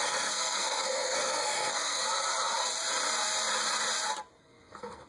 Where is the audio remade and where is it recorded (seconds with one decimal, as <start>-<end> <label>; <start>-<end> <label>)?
0.0-2.0 remade; 2.0-4.4 recorded; 4.4-5.1 remade